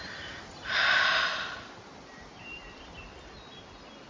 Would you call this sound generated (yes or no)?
no